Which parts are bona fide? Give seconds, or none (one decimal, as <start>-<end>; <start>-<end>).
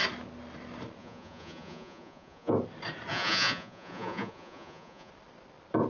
0.0-1.0; 2.5-3.1; 5.1-5.9